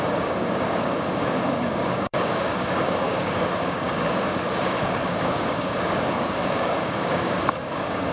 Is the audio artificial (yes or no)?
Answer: yes